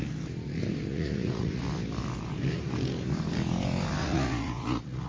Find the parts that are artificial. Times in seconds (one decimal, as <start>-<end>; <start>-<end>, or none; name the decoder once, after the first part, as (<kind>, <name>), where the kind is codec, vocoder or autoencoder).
0.9-1.6 (vocoder, Vocos); 4.0-5.1